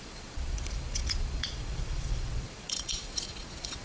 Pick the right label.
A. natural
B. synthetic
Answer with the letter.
B